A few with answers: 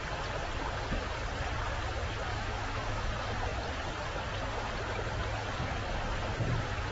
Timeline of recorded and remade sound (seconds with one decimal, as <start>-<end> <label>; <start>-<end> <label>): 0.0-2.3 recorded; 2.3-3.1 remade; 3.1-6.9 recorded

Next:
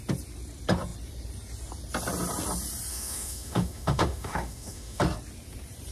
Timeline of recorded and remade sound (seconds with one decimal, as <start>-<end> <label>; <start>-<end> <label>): 0.0-2.9 recorded; 2.9-5.0 remade; 5.0-5.9 recorded

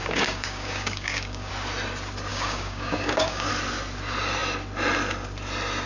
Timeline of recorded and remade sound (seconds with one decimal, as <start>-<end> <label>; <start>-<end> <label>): 0.0-1.5 remade; 1.5-2.3 recorded; 2.3-3.5 remade; 3.5-5.9 recorded

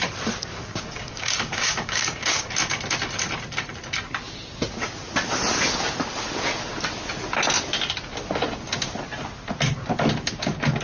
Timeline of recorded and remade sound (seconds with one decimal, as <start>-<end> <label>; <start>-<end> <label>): 0.0-0.5 recorded; 0.5-2.5 remade; 2.5-10.8 recorded

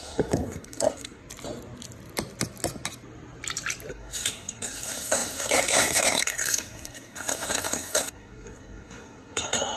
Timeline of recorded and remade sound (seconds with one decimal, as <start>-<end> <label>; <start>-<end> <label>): 0.0-1.2 remade; 1.2-3.9 recorded; 3.9-9.8 remade

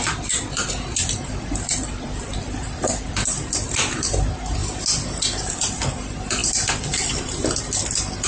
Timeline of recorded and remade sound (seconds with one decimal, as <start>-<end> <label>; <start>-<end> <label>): 0.0-4.6 remade; 4.6-5.5 recorded; 5.5-8.3 remade

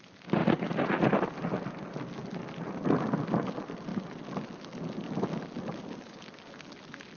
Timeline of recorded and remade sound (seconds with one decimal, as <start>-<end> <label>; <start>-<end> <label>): 0.0-0.4 recorded; 0.4-1.1 remade; 1.1-7.2 recorded

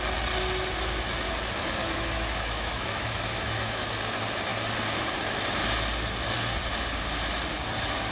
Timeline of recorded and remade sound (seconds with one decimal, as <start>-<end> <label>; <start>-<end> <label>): 0.0-1.8 recorded; 1.8-4.0 remade; 4.0-8.1 recorded